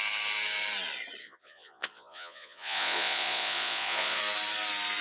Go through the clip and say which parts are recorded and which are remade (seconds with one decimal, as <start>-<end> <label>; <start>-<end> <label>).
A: 0.0-1.2 recorded; 1.2-4.2 remade; 4.2-5.0 recorded